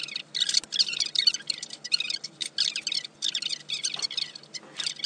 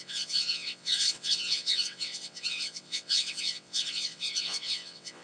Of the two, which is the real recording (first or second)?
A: first